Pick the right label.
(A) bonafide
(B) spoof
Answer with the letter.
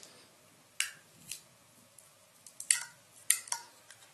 A